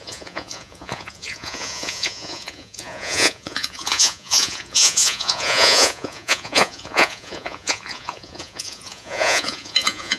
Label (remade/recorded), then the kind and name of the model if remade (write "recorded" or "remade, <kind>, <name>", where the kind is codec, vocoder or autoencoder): remade, vocoder, Vocos